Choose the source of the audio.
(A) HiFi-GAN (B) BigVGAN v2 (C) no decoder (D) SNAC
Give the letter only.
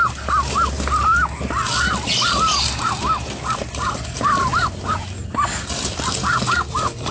C